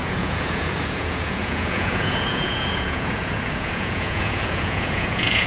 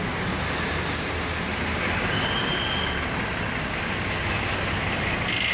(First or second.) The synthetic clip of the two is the first